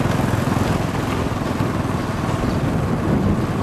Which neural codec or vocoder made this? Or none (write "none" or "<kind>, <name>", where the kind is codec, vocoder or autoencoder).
none